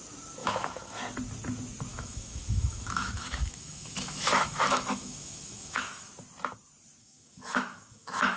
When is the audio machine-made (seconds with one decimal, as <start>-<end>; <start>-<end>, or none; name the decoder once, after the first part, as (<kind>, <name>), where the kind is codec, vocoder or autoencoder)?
0.4-1.0 (autoencoder, DAC-VAE); 1.9-6.1; 7.0-8.4